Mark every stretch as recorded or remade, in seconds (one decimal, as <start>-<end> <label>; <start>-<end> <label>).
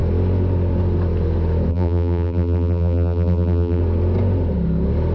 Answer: 0.0-1.7 recorded; 1.7-3.8 remade; 3.8-5.1 recorded